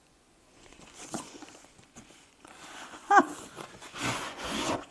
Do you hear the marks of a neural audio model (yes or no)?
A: yes